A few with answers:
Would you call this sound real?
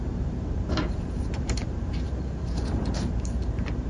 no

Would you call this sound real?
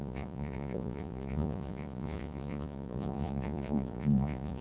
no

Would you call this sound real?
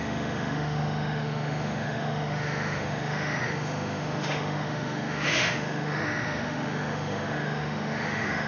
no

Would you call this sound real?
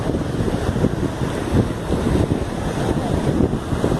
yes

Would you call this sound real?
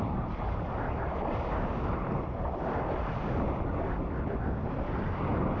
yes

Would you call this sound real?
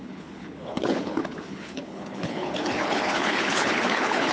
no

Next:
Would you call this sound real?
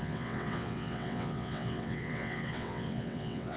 no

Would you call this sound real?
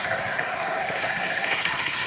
no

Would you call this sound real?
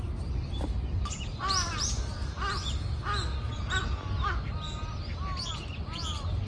yes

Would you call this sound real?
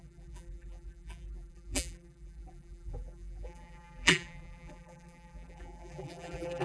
no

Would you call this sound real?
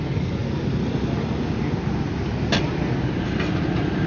yes